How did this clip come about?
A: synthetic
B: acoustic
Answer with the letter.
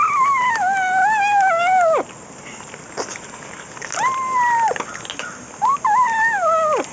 B